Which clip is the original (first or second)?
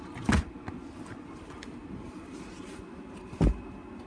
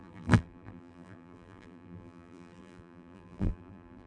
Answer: first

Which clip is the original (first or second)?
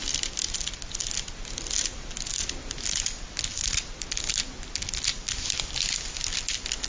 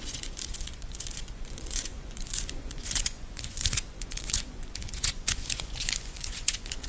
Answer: first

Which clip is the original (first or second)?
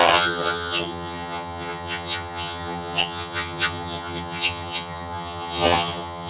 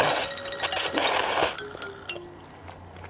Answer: second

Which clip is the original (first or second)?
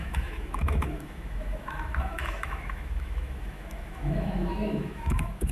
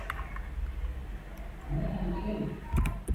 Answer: second